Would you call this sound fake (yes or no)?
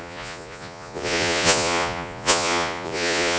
yes